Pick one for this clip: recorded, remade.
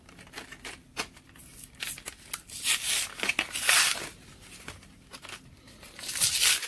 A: recorded